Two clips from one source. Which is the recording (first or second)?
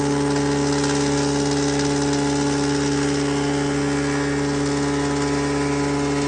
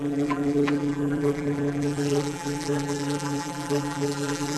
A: first